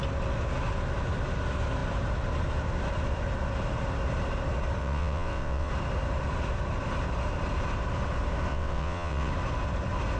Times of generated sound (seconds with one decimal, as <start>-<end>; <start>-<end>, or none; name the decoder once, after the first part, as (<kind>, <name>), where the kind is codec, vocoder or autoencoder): 4.8-5.7 (vocoder, WaveNeXt); 8.5-9.3